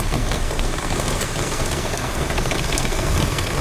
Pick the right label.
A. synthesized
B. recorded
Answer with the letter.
A